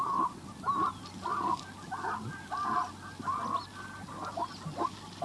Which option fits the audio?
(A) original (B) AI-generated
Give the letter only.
A